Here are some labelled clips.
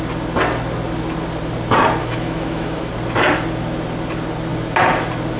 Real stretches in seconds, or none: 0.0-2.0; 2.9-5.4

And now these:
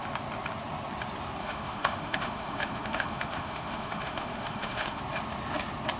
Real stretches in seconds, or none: 0.0-1.4; 5.0-6.0

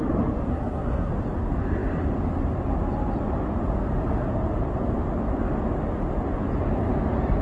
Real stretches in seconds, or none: 0.0-0.5; 1.1-7.4